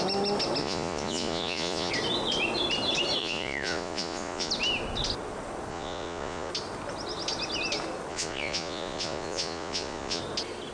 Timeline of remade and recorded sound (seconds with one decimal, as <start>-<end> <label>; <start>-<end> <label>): 0.0-0.6 recorded; 0.6-1.9 remade; 1.9-3.2 recorded; 3.2-4.5 remade; 4.5-5.7 recorded; 5.7-6.5 remade; 6.5-8.1 recorded; 8.1-10.2 remade; 10.2-10.7 recorded